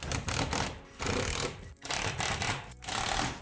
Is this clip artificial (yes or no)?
yes